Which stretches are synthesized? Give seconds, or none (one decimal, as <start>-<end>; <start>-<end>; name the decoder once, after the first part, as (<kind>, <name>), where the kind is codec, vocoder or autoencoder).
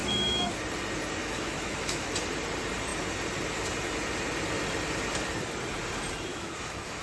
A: 0.0-0.5 (autoencoder, DAC-VAE); 1.2-2.1; 6.3-7.0